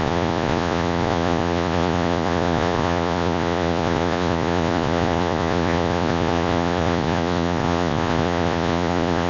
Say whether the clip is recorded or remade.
remade